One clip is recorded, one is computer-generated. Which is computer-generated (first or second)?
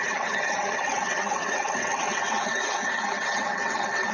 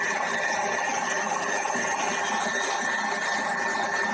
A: first